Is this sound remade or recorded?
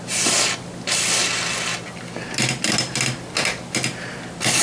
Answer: recorded